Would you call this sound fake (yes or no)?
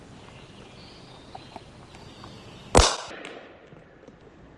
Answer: no